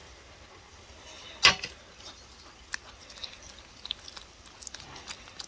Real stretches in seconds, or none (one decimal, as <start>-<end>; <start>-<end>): 0.0-5.5